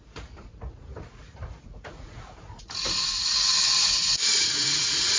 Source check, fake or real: fake